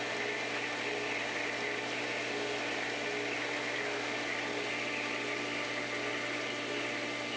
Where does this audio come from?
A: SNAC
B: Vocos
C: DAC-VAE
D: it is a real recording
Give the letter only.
D